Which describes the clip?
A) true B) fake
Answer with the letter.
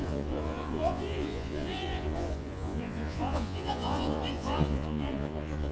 B